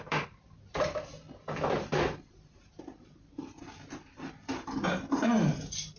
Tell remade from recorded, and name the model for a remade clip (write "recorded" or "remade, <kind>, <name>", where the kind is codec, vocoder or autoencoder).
recorded